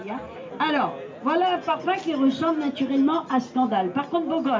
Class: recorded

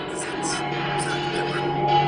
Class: recorded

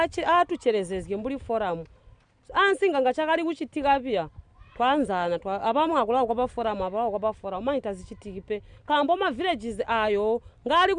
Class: recorded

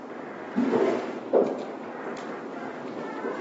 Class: recorded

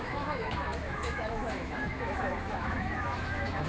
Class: remade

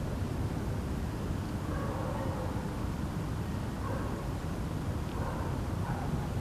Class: recorded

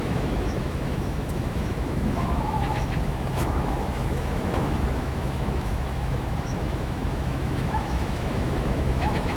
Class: remade